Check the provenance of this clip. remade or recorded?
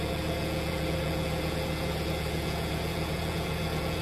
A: remade